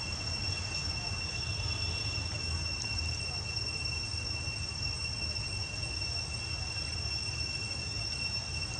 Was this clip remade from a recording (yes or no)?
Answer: no